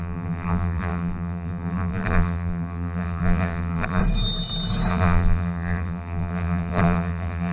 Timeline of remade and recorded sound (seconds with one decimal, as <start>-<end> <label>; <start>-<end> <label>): 0.0-4.0 remade; 4.0-4.9 recorded; 4.9-7.5 remade